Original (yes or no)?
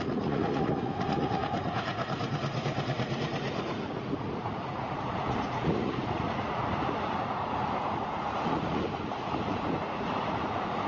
no